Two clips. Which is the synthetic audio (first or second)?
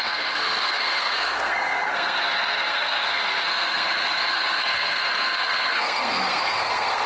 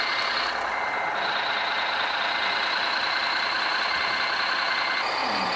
first